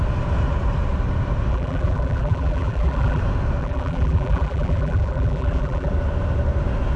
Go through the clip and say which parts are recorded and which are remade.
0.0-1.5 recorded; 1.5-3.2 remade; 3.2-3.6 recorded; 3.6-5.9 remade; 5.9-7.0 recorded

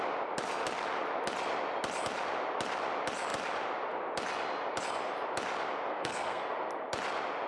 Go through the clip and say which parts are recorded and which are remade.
0.0-5.9 recorded; 5.9-6.4 remade; 6.4-7.5 recorded